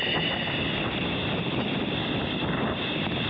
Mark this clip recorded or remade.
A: recorded